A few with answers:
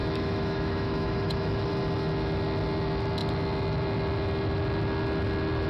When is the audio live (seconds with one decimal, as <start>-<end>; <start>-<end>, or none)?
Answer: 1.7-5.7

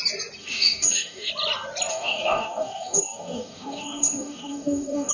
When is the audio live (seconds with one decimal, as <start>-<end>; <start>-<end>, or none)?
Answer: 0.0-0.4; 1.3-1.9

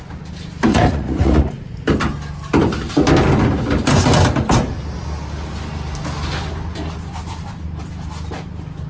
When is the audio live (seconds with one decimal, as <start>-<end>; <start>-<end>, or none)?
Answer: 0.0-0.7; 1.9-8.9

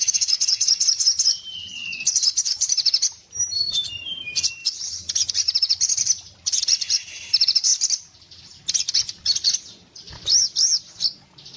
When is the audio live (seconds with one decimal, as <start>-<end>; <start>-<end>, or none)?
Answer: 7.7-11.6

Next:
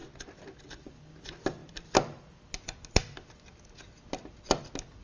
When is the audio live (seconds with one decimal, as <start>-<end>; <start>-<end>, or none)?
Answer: 0.0-5.0